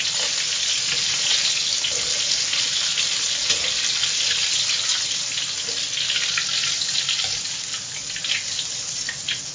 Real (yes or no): yes